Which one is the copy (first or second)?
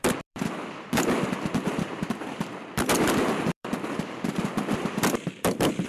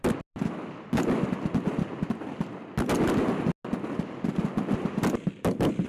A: first